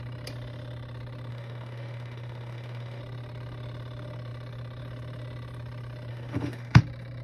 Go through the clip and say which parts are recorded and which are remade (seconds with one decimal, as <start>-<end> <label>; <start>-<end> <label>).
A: 0.0-1.3 recorded; 1.3-3.0 remade; 3.0-6.1 recorded; 6.1-6.8 remade; 6.8-7.2 recorded